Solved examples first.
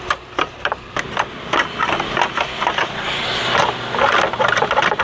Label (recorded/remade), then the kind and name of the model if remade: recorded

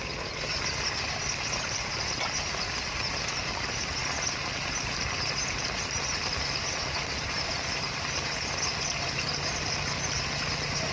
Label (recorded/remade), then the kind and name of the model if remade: recorded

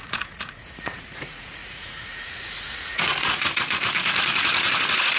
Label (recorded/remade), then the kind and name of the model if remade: remade, vocoder, Vocos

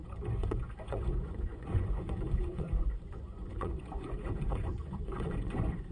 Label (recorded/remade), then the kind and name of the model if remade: remade, vocoder, Vocos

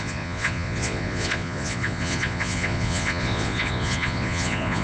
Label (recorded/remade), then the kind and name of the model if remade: remade, vocoder, Vocos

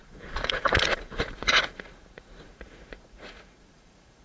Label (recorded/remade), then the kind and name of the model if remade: remade, vocoder, Vocos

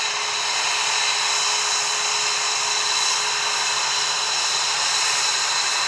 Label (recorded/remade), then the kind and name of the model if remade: recorded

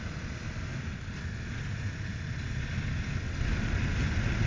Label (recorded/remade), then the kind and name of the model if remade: recorded